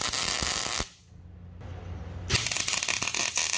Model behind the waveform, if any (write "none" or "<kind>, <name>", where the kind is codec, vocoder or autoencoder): none